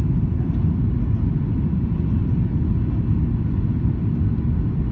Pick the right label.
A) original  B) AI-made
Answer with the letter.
A